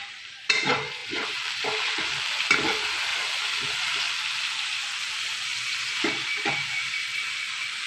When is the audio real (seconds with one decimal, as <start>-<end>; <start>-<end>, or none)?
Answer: 3.1-5.0; 5.5-6.3